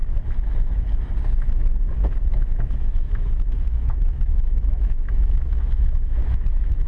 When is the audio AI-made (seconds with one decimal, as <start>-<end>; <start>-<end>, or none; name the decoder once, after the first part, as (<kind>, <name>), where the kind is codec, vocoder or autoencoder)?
2.6-6.9 (autoencoder, DAC-VAE)